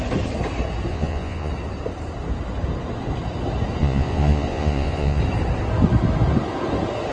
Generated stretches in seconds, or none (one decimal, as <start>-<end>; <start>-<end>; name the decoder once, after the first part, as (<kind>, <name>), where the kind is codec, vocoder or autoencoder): 0.9-1.5 (vocoder, Vocos); 3.8-5.2